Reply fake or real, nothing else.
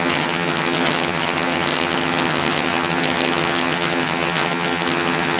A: fake